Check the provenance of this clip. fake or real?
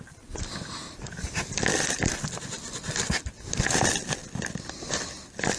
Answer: real